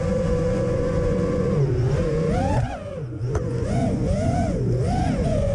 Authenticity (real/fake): fake